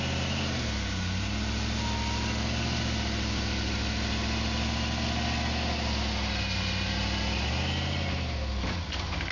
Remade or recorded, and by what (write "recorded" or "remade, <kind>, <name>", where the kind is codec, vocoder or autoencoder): recorded